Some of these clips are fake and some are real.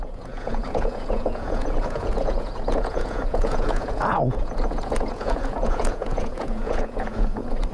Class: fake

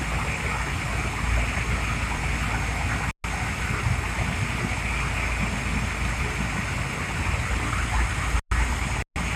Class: real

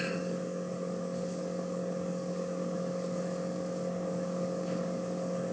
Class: fake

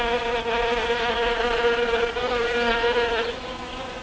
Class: fake